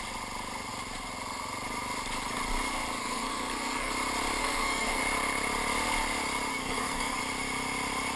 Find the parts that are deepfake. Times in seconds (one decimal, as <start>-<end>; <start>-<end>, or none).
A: 3.0-3.9; 4.4-5.0; 6.5-7.2